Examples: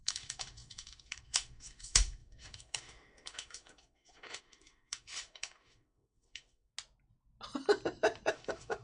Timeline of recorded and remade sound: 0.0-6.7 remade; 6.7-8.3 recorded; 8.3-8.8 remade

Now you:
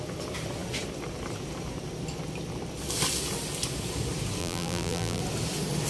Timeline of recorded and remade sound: 0.0-4.4 recorded; 4.4-5.2 remade; 5.2-5.9 recorded

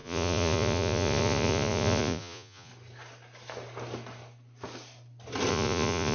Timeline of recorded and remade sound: 0.0-2.7 remade; 2.7-5.5 recorded; 5.5-6.1 remade